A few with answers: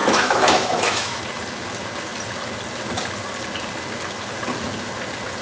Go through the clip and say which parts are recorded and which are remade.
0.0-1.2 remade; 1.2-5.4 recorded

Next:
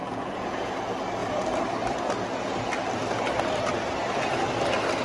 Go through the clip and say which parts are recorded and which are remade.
0.0-0.7 remade; 0.7-5.0 recorded

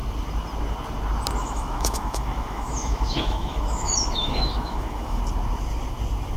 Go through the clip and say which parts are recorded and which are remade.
0.0-1.4 recorded; 1.4-5.2 remade; 5.2-6.4 recorded

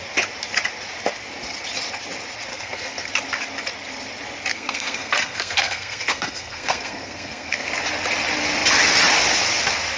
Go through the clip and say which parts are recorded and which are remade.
0.0-2.5 recorded; 2.5-3.1 remade; 3.1-4.5 recorded; 4.5-7.7 remade; 7.7-10.0 recorded